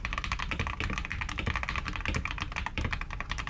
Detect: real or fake fake